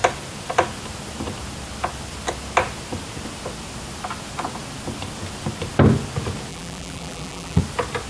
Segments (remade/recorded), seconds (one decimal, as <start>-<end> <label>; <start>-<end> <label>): 0.0-6.5 recorded; 6.5-7.6 remade; 7.6-8.1 recorded